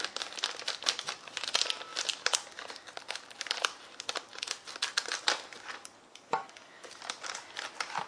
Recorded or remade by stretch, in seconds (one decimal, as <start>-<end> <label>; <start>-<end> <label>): 0.0-6.1 recorded; 6.1-6.9 remade; 6.9-8.1 recorded